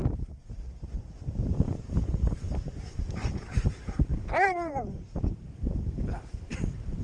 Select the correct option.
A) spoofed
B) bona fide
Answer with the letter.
A